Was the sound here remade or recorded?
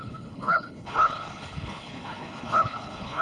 remade